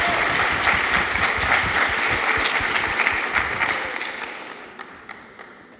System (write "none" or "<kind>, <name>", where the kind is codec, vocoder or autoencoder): none